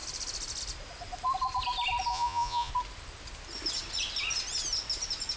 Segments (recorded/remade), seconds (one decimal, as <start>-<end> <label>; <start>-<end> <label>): 0.0-2.1 recorded; 2.1-2.7 remade; 2.7-5.4 recorded